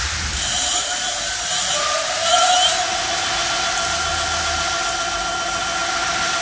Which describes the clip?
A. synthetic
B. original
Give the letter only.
B